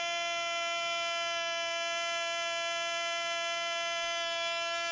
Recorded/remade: recorded